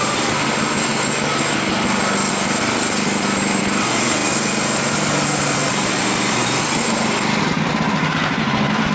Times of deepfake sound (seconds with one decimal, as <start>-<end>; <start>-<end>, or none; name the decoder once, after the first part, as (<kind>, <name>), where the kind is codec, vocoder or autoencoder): none